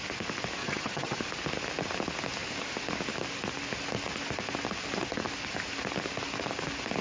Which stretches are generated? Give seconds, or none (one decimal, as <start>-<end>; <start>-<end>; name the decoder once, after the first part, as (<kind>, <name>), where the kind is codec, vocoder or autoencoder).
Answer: 0.6-1.2 (vocoder, HiFi-GAN)